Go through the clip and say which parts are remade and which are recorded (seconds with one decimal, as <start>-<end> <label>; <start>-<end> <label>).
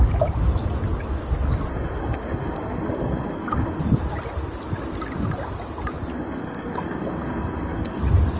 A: 0.0-1.7 recorded; 1.7-3.8 remade; 3.8-6.1 recorded; 6.1-8.0 remade; 8.0-8.4 recorded